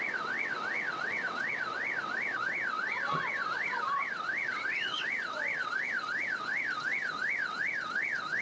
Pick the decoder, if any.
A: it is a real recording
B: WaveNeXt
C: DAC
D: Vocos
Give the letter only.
B